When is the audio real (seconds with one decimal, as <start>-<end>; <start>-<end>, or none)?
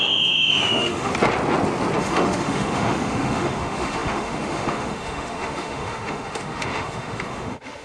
1.1-2.0